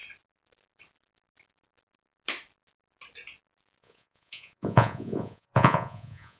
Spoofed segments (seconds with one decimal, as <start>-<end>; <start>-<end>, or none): 3.8-6.4